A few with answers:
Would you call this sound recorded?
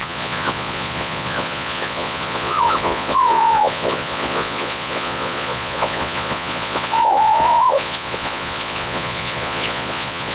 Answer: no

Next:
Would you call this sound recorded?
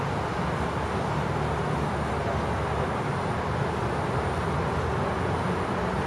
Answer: yes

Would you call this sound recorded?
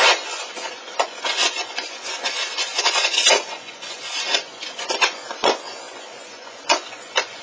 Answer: no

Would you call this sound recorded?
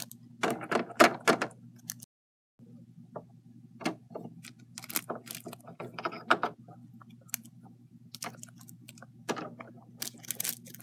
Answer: yes